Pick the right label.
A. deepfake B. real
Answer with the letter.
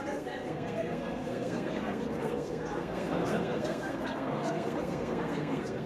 A